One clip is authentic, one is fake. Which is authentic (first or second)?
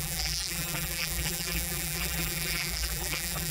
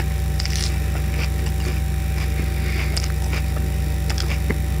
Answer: second